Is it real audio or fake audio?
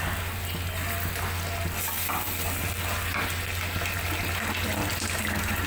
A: real